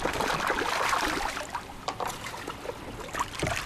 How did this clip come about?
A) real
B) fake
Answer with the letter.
B